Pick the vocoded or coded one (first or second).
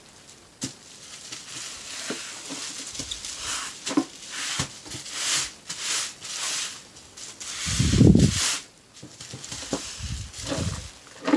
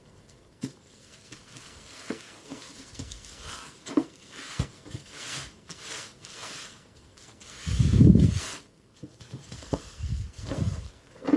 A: second